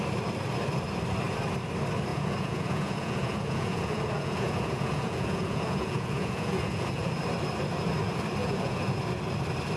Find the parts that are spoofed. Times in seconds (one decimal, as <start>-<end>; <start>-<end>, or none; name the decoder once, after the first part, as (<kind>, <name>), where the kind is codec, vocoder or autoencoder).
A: 2.1-7.1 (vocoder, Vocos); 8.4-9.0